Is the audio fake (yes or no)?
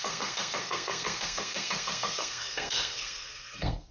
yes